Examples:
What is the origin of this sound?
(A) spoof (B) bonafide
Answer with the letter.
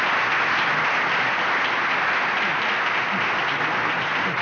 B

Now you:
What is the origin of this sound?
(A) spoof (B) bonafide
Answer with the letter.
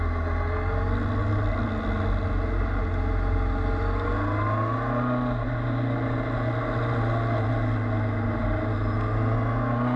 B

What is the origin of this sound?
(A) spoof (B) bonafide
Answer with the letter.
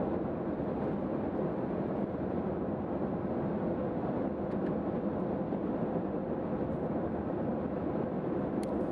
B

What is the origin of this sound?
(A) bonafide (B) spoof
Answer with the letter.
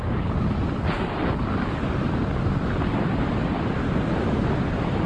A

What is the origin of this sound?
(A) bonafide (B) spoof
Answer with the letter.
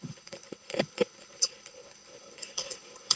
B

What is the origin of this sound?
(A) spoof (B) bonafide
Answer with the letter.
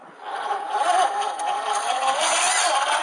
B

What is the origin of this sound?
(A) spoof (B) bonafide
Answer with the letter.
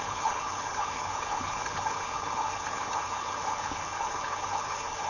A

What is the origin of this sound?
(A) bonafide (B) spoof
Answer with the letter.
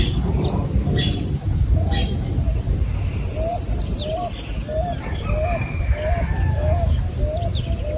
A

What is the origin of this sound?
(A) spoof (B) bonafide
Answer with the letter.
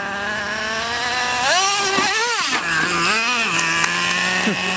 B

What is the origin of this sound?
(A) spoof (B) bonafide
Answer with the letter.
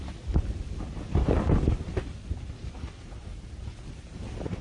B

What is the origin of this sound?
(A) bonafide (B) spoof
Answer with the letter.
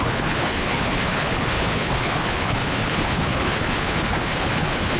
B